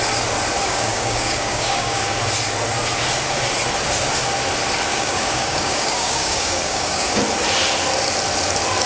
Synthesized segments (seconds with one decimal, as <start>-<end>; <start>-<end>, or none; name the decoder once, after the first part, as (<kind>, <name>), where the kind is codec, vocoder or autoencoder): 0.6-2.2 (codec, DAC); 4.9-7.2